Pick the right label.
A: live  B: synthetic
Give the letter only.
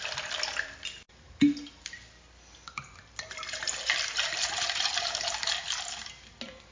A